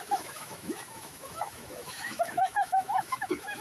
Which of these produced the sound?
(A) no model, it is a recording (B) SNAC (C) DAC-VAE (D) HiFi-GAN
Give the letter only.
C